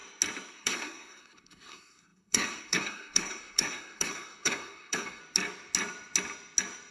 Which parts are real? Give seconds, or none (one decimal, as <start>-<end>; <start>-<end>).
0.0-0.5; 5.2-6.9